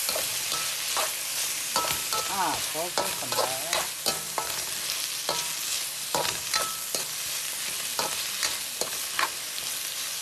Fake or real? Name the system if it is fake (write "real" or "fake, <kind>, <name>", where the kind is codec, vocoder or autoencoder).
real